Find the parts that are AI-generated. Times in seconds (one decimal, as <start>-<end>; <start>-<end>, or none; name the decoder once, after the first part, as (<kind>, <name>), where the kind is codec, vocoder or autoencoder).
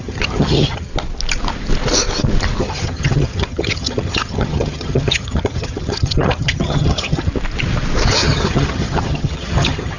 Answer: 0.0-0.9 (vocoder, HiFi-GAN); 2.6-7.3; 8.1-10.0